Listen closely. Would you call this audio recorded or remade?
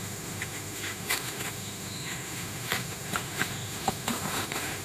remade